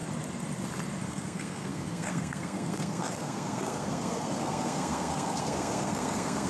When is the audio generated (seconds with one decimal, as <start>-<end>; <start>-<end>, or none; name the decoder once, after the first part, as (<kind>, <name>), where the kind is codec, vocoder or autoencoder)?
1.1-6.5 (codec, SNAC)